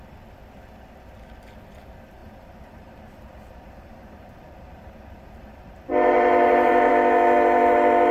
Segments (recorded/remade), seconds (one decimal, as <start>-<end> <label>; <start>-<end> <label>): 0.0-2.2 recorded; 2.2-6.9 remade; 6.9-8.1 recorded